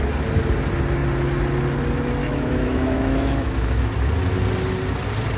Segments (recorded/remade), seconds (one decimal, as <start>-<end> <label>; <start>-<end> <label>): 0.0-2.2 recorded; 2.2-3.9 remade; 3.9-5.4 recorded